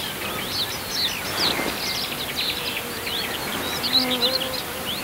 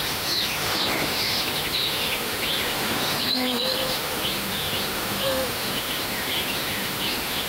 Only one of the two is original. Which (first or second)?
first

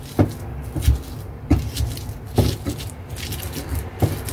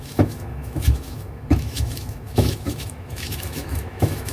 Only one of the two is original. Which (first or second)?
first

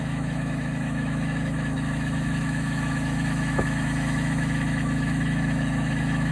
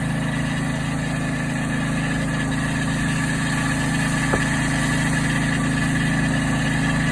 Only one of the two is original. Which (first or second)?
second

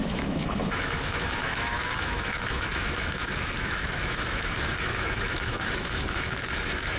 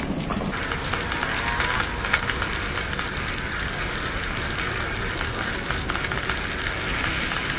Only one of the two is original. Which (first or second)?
second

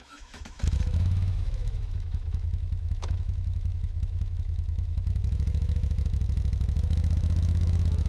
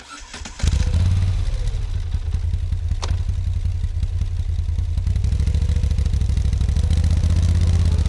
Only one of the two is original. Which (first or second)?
second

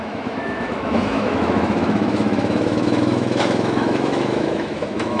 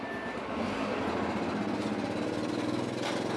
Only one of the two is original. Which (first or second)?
second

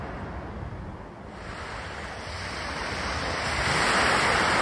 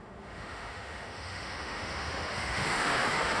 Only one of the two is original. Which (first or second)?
first